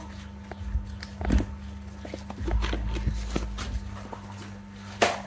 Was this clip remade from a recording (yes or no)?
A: no